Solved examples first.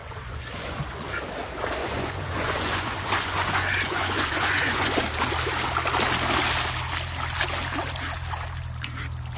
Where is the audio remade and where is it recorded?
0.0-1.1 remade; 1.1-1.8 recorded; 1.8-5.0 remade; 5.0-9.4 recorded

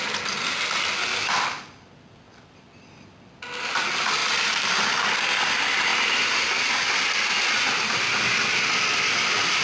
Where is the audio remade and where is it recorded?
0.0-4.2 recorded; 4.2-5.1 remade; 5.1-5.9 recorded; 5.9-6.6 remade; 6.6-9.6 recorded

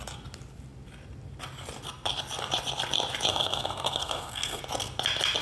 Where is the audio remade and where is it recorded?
0.0-3.3 recorded; 3.3-4.6 remade; 4.6-5.4 recorded